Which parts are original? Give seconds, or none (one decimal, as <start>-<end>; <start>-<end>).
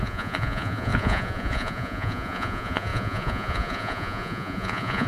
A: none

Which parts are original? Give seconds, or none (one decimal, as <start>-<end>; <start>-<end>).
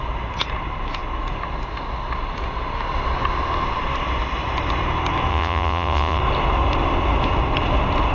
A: 0.0-5.3; 6.2-8.1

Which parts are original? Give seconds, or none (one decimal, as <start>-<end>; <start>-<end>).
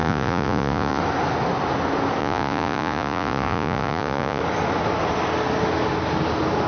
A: 1.0-2.2; 4.4-6.7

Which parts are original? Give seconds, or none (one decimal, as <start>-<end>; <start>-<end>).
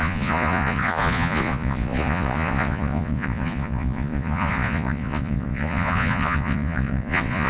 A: none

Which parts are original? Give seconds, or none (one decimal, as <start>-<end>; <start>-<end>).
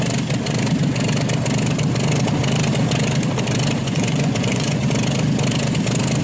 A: 0.0-3.8; 4.9-6.2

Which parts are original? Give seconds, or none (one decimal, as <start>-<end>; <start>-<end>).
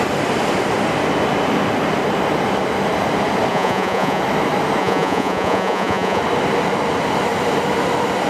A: 0.0-3.5; 4.2-4.8; 6.2-8.3